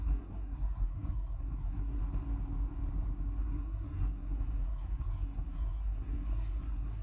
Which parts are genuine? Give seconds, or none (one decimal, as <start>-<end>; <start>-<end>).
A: 2.0-3.4